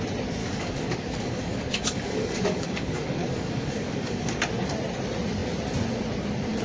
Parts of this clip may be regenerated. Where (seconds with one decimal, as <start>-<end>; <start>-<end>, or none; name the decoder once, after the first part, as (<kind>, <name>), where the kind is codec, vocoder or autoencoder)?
0.4-4.4 (codec, DAC)